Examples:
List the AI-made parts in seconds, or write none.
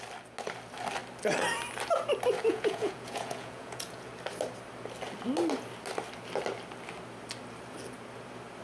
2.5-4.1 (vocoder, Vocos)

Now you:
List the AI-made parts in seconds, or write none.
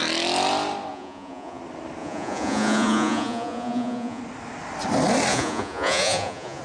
0.9-1.6 (vocoder, Vocos); 2.0-4.2; 5.3-6.6